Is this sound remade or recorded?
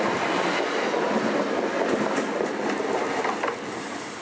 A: recorded